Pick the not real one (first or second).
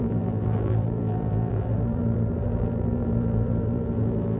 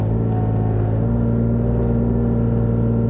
first